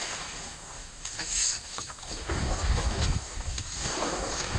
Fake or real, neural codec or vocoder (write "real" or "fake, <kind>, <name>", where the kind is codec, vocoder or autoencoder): fake, codec, DAC